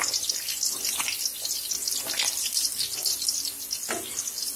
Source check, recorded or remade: recorded